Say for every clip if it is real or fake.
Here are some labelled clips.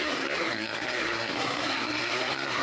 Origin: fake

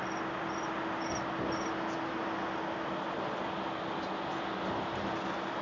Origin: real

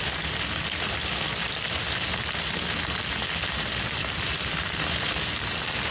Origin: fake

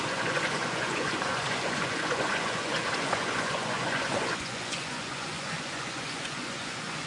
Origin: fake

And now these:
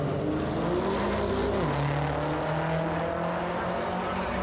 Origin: real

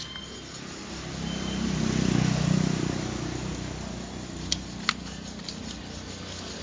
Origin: real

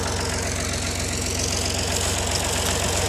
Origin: real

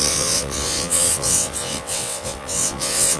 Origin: fake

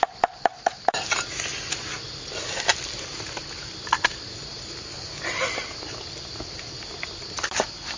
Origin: real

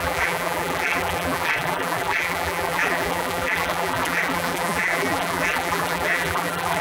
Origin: fake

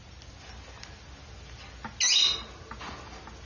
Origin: real